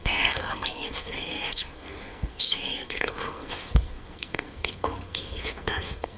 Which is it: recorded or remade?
remade